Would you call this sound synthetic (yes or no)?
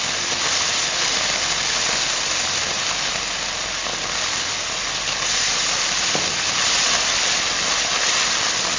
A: no